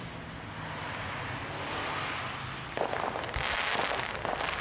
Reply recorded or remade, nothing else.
recorded